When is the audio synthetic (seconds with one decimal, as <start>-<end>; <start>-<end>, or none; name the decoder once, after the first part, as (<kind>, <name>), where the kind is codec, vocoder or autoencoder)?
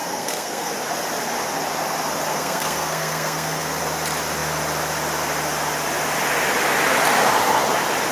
0.0-0.7 (codec, SNAC); 2.3-3.8